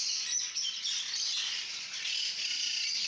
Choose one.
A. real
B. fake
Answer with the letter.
A